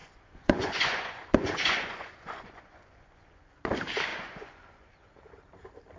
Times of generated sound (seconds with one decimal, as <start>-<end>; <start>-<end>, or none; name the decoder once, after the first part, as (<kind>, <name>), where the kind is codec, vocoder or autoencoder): 0.0-3.6 (vocoder, Vocos); 4.1-5.1